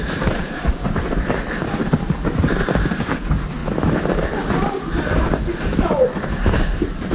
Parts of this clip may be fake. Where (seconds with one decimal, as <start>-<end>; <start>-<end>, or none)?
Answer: 0.0-7.1